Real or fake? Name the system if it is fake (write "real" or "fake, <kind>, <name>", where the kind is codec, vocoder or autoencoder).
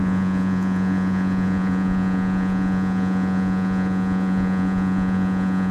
fake, vocoder, Vocos